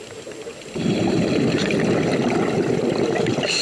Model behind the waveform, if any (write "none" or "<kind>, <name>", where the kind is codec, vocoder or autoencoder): none